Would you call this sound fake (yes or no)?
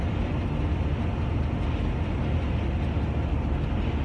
no